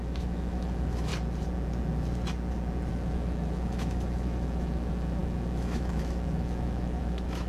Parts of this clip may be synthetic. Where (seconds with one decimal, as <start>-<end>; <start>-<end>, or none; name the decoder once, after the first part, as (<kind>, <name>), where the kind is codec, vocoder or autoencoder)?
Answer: 0.0-1.1 (autoencoder, DAC-VAE); 2.9-7.5